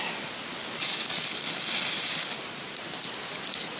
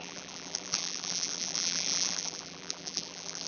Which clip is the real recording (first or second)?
first